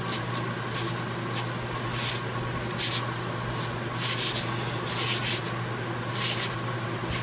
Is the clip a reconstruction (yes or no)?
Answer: no